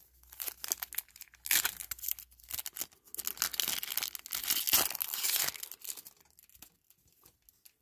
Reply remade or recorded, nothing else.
recorded